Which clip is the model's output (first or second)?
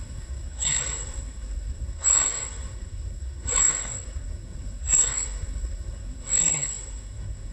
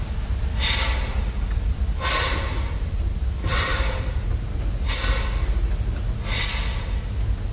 first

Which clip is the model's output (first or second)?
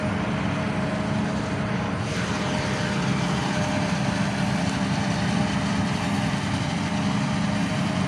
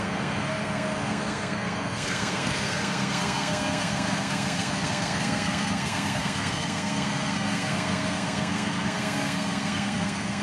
second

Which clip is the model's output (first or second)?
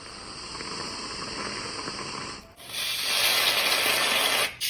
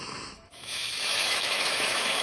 second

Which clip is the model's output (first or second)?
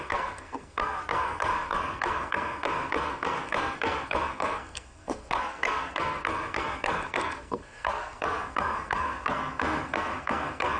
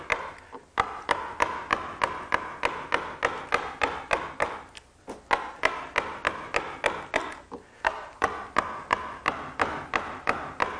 first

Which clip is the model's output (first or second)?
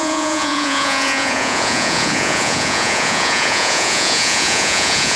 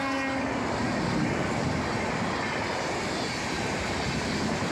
first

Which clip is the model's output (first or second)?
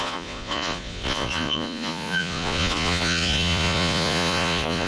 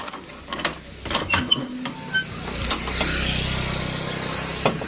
first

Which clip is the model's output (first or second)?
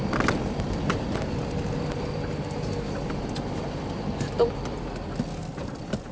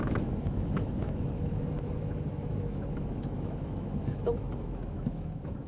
second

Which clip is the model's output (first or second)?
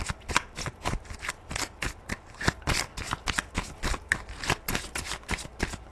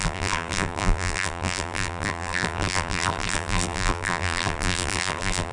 second